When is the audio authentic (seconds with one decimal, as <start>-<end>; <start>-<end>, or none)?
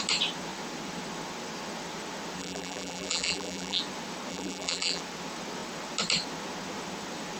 0.0-2.4; 3.8-4.3; 5.0-7.4